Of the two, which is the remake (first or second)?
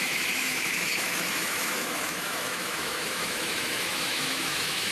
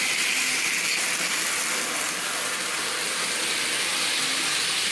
first